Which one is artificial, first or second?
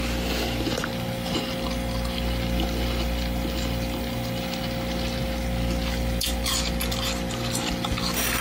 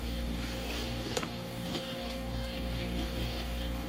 second